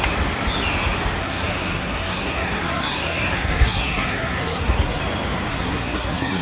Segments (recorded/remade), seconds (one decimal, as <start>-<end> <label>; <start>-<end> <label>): 0.0-1.2 recorded; 1.2-5.0 remade; 5.0-5.5 recorded; 5.5-6.4 remade